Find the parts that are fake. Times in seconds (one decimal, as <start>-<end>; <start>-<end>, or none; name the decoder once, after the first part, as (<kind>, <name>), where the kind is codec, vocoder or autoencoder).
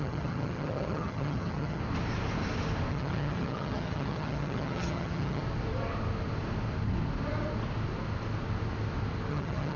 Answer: 0.0-1.8 (vocoder, HiFi-GAN); 2.9-5.4; 9.3-9.8